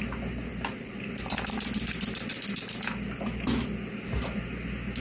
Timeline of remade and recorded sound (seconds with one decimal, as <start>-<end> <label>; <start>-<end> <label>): 0.0-5.0 recorded